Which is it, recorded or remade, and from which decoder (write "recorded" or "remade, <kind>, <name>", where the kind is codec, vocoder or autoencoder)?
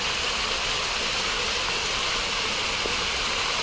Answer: recorded